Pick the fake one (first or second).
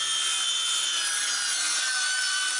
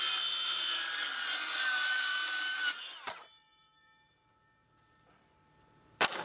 second